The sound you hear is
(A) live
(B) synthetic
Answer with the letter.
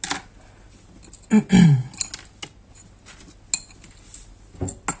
A